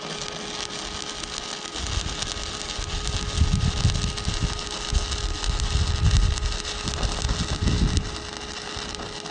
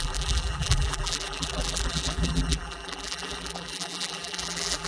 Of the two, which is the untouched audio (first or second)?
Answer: first